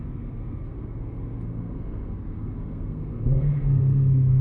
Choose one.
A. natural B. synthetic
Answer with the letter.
B